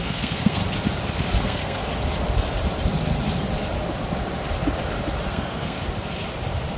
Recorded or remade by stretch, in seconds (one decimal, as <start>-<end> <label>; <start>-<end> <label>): 0.0-0.6 remade; 0.6-1.4 recorded; 1.4-1.8 remade; 1.8-5.3 recorded; 5.3-5.8 remade; 5.8-6.8 recorded